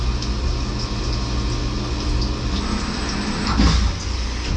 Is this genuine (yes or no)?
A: yes